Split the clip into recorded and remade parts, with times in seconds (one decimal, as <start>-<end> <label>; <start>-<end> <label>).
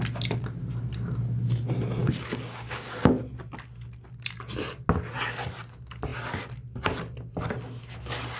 0.0-2.0 recorded; 2.0-3.2 remade; 3.2-8.4 recorded